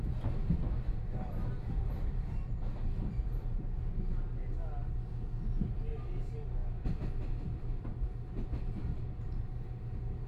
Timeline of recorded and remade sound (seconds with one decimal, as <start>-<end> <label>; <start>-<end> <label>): 0.0-0.4 recorded; 0.4-2.7 remade; 2.7-8.9 recorded; 8.9-9.8 remade; 9.8-10.3 recorded

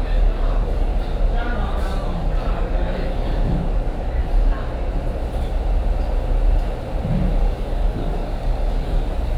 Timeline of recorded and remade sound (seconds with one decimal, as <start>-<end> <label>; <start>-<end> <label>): 0.0-0.9 remade; 0.9-1.4 recorded; 1.4-4.2 remade; 4.2-7.4 recorded; 7.4-9.4 remade

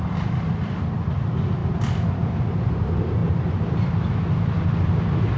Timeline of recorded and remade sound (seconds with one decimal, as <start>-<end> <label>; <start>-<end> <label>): 0.0-5.4 recorded

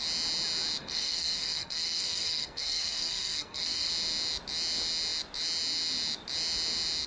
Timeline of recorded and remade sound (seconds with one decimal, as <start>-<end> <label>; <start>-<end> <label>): 0.0-0.8 recorded; 0.8-3.9 remade; 3.9-7.1 recorded

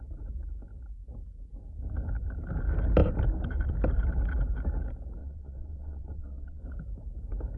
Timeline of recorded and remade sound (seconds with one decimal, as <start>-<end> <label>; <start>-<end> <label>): 0.0-5.2 recorded; 5.2-6.6 remade; 6.6-7.6 recorded